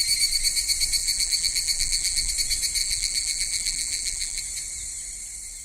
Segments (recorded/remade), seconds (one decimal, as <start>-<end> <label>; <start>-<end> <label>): 0.0-1.0 recorded; 1.0-2.3 remade; 2.3-2.8 recorded; 2.8-4.4 remade; 4.4-5.6 recorded